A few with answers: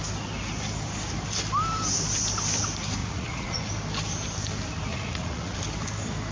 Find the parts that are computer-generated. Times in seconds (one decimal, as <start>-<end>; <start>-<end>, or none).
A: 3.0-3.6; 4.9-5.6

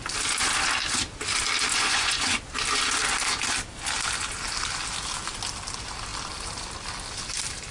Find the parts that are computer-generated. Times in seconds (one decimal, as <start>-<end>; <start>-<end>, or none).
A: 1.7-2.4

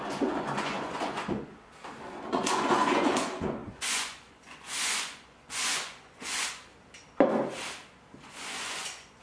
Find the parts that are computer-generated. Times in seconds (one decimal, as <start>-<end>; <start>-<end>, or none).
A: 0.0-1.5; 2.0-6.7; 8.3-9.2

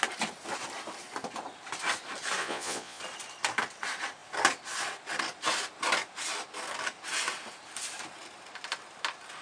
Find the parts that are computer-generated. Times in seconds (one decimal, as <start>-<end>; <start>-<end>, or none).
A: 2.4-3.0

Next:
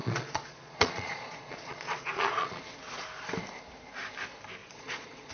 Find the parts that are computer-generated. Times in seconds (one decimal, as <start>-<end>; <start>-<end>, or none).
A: 0.0-2.6; 4.6-5.3

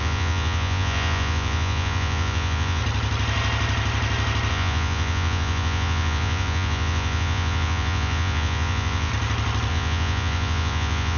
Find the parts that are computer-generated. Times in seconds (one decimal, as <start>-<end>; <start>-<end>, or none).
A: 0.0-2.8; 4.5-9.1; 9.7-11.2

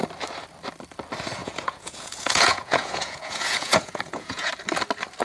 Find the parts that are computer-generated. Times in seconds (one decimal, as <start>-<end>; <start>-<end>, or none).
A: 1.4-4.5